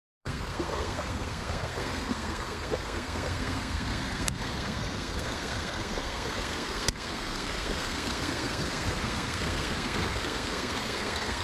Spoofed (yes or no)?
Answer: yes